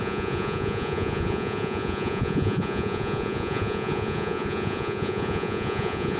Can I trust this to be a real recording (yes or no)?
no